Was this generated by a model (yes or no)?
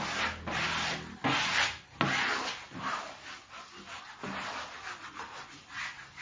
no